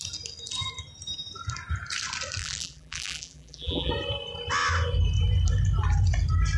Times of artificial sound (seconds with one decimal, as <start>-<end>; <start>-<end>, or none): 2.4-3.9